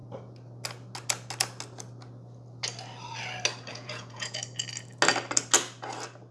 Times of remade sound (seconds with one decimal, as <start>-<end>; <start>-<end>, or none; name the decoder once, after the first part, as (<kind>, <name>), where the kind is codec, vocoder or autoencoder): 3.7-4.4 (vocoder, Vocos)